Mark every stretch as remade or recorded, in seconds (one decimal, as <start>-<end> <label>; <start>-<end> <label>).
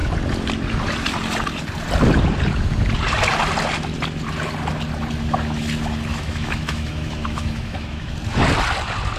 0.0-6.1 recorded; 6.1-8.1 remade; 8.1-9.2 recorded